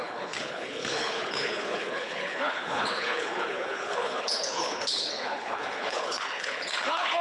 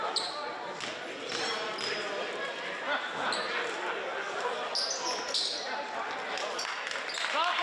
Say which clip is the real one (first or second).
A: second